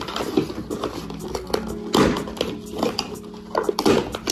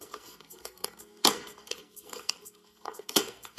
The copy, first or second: second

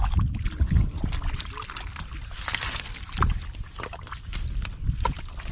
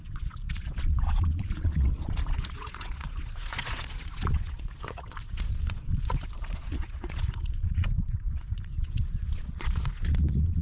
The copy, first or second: second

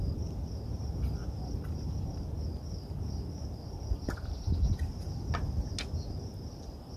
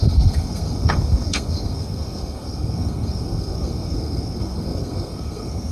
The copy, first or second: second